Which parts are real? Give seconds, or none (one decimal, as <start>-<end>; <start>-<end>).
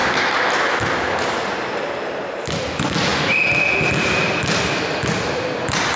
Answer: 0.0-6.0